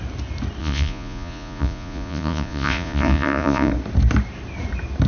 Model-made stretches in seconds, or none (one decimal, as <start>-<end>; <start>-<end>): 0.6-3.7